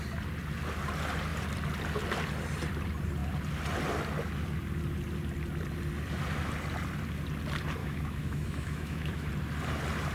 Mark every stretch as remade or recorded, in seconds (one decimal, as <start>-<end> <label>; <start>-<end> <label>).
0.0-7.8 recorded; 7.8-9.3 remade; 9.3-10.1 recorded